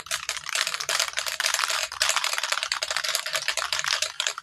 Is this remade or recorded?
remade